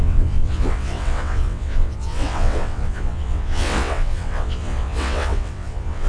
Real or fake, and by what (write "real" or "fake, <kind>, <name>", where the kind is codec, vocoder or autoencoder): fake, vocoder, WaveNeXt